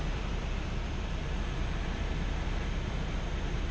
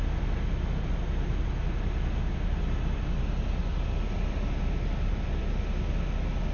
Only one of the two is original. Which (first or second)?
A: second